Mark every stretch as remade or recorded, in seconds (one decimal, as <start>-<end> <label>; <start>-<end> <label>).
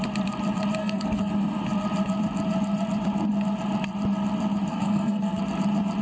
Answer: 0.0-0.8 recorded; 0.8-1.3 remade; 1.3-4.7 recorded; 4.7-5.4 remade; 5.4-6.0 recorded